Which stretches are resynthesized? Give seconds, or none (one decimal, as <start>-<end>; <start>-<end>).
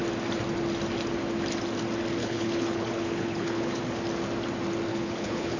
2.2-3.8; 4.9-5.6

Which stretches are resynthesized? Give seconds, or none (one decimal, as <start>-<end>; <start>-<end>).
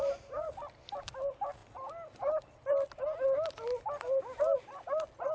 none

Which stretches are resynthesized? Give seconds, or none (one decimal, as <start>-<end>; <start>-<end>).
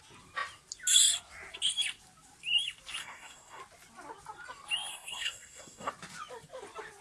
3.0-3.6; 4.9-5.9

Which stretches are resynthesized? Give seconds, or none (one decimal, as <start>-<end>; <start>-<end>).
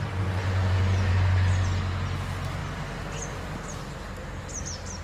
none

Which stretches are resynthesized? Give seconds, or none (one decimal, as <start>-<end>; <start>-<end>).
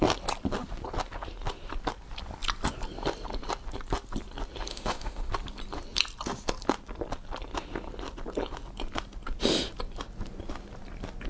4.7-5.3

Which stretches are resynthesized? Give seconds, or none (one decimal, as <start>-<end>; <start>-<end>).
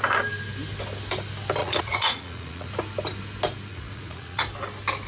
1.6-2.7; 3.7-4.4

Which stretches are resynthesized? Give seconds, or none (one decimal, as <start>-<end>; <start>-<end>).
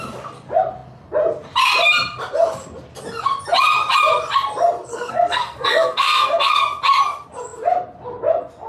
4.9-6.6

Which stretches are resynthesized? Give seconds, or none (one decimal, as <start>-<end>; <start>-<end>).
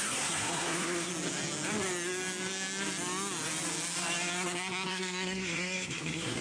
0.0-1.1; 4.9-6.4